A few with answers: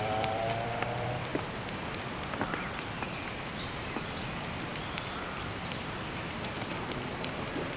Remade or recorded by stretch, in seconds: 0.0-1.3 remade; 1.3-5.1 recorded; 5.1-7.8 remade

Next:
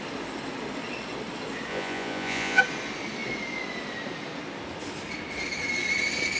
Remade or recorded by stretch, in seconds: 0.0-1.7 recorded; 1.7-2.6 remade; 2.6-6.4 recorded

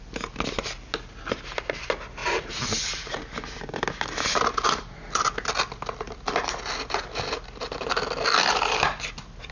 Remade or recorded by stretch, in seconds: 0.0-2.2 recorded; 2.2-3.2 remade; 3.2-9.5 recorded

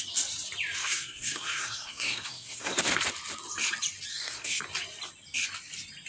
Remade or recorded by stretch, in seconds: 0.0-0.8 recorded; 0.8-2.8 remade; 2.8-4.1 recorded; 4.1-4.6 remade; 4.6-6.1 recorded

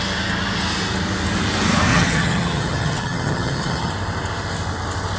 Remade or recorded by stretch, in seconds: 0.0-1.9 recorded; 1.9-3.9 remade; 3.9-5.2 recorded

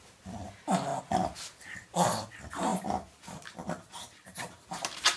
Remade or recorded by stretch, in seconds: 0.0-5.2 recorded